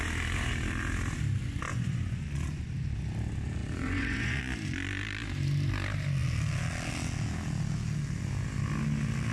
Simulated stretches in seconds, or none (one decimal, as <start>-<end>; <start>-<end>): 1.7-2.6; 3.6-4.4